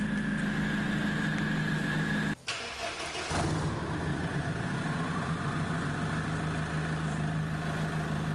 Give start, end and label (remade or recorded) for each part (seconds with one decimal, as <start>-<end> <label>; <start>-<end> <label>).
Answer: 0.0-2.5 recorded; 2.5-3.0 remade; 3.0-4.1 recorded; 4.1-5.9 remade; 5.9-8.3 recorded